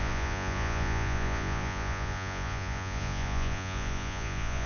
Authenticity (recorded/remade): remade